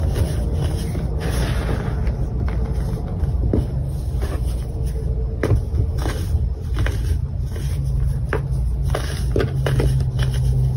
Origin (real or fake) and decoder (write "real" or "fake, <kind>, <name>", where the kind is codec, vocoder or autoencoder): real